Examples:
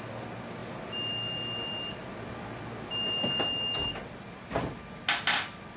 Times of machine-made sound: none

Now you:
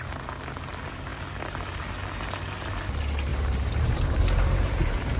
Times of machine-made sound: 3.3-5.2

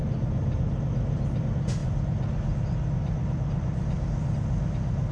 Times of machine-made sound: none

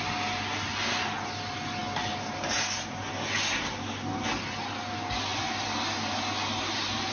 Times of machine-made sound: none

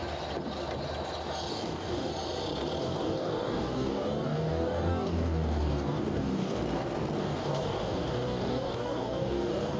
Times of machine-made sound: 1.5-2.1; 2.8-6.6; 7.2-9.8

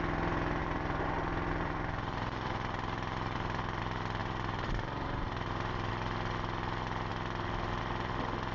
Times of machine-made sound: 0.6-3.8; 4.2-5.9

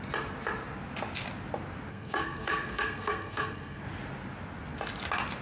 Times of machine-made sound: 1.9-3.8